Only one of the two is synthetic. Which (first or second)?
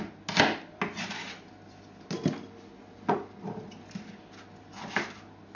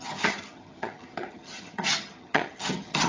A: second